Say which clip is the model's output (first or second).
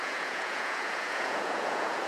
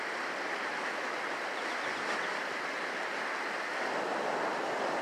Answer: first